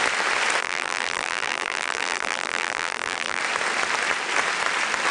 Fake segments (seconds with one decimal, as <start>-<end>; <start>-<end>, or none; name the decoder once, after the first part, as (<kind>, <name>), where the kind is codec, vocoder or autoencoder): 0.6-3.4 (vocoder, BigVGAN v2)